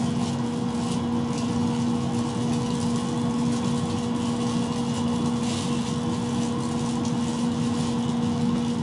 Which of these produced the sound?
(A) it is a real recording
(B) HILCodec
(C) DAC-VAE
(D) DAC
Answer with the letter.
A